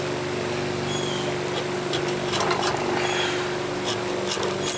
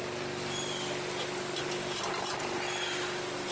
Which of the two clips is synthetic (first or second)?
second